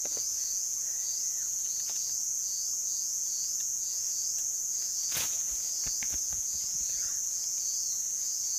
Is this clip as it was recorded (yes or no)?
no